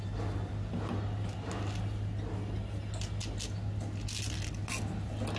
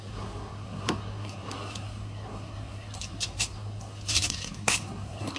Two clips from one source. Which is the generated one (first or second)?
second